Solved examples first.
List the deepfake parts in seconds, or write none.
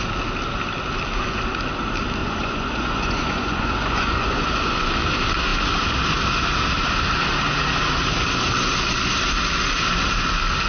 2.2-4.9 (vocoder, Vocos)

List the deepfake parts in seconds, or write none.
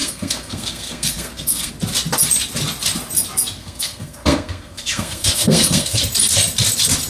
0.0-1.7 (codec, SNAC); 3.6-6.0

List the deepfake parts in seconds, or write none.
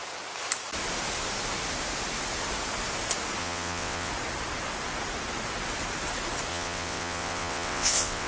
3.4-4.1 (vocoder, WaveNeXt); 6.5-8.3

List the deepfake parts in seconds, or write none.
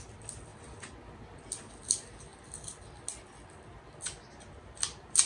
none